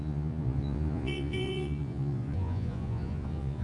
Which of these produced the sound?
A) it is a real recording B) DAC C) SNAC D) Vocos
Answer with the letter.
D